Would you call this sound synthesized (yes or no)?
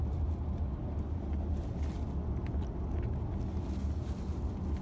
no